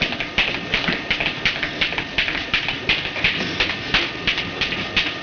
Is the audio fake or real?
real